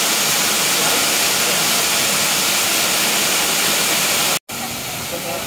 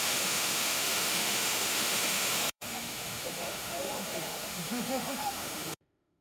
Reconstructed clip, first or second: second